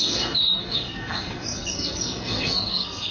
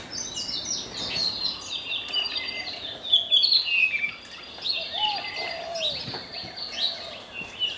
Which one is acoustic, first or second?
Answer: second